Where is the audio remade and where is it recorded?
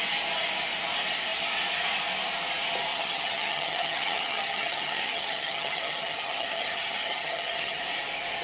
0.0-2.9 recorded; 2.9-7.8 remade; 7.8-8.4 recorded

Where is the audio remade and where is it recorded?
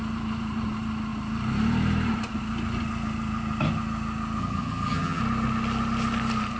0.0-4.4 recorded; 4.4-5.2 remade; 5.2-6.6 recorded